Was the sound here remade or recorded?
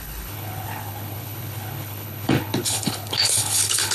remade